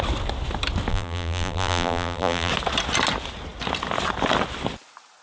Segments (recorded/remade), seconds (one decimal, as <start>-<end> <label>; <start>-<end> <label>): 0.0-0.9 recorded; 0.9-2.5 remade; 2.5-5.2 recorded